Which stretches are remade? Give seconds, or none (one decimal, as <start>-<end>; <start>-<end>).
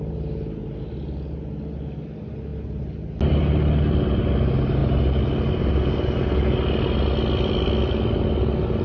none